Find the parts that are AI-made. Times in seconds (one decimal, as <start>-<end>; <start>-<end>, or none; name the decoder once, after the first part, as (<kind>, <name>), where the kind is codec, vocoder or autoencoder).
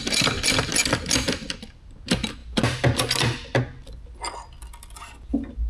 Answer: none